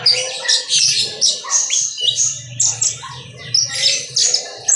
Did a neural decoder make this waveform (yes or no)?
no